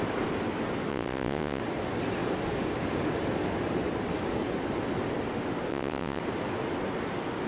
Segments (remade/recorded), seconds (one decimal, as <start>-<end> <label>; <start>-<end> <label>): 0.0-0.9 recorded; 0.9-1.6 remade; 1.6-5.7 recorded; 5.7-6.2 remade; 6.2-7.5 recorded